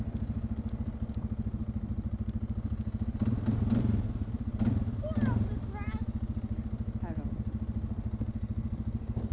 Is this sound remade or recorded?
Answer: recorded